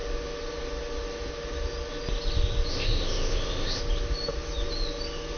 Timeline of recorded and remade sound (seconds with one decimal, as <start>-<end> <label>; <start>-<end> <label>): 0.0-2.7 recorded; 2.7-3.8 remade; 3.8-5.4 recorded